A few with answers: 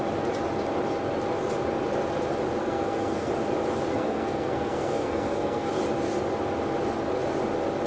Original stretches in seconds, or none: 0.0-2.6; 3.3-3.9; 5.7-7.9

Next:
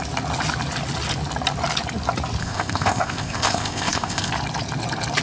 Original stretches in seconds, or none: 0.0-2.4; 4.3-5.2

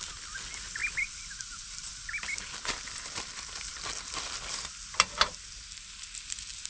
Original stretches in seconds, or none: 0.0-6.7

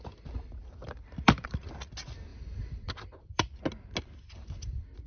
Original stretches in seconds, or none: 0.0-0.6; 1.6-2.3; 3.6-5.1

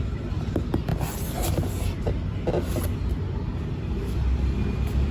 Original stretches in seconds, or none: 0.0-5.1

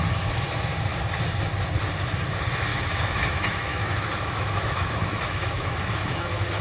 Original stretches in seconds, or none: 0.0-2.7

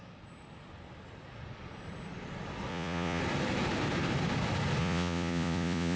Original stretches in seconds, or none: 0.0-2.7; 3.2-4.8